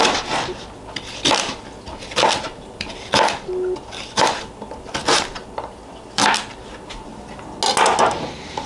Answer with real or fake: real